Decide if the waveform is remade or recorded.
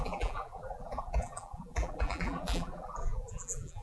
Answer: remade